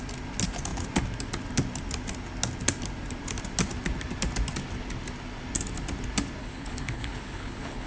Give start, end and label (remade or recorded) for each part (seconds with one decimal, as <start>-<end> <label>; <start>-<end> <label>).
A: 0.0-6.4 recorded; 6.4-7.9 remade